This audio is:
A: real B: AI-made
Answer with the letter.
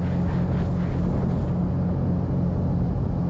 A